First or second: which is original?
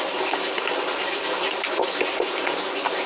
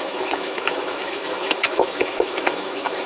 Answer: first